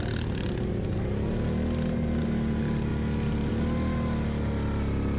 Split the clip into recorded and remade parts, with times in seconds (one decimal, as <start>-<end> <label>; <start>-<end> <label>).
0.0-5.2 recorded